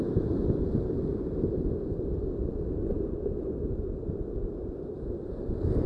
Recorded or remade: recorded